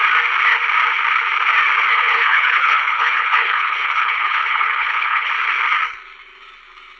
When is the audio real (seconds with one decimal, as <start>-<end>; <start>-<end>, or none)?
0.0-1.9; 5.3-7.0